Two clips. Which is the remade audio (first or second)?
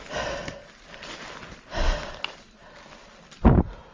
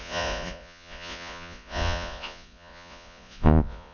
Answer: second